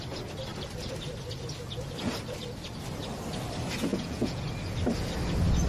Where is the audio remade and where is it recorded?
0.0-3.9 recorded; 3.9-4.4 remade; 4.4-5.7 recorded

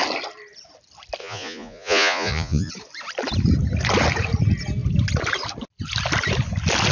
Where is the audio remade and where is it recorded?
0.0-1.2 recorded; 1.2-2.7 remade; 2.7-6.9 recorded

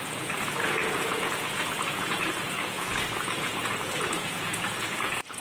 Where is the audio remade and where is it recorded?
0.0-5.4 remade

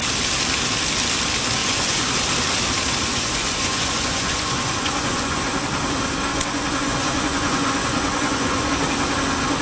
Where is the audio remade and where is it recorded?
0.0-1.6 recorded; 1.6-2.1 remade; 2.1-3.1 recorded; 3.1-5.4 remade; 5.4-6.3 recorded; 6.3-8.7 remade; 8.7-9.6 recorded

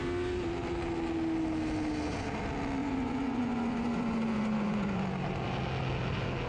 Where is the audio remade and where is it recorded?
0.0-2.8 recorded; 2.8-5.0 remade; 5.0-6.5 recorded